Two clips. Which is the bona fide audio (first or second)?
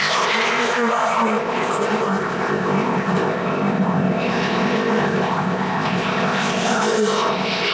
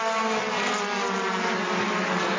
second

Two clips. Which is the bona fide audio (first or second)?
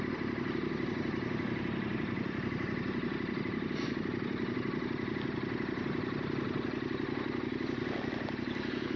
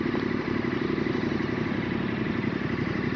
first